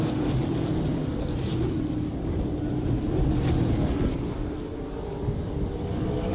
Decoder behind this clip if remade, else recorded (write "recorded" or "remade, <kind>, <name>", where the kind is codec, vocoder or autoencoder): remade, vocoder, BigVGAN v2